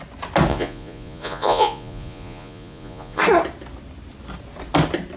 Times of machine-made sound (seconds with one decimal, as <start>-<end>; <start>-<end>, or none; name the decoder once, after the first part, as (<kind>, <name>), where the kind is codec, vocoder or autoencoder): 0.5-3.2 (vocoder, Vocos)